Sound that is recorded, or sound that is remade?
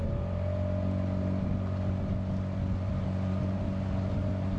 recorded